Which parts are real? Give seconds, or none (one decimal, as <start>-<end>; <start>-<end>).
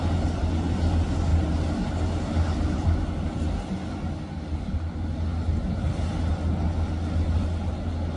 0.0-8.2